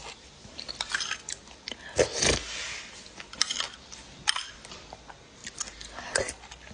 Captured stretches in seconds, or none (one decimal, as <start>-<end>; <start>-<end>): 0.0-6.7